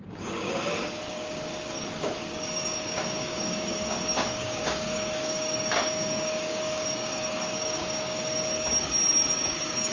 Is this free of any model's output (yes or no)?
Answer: no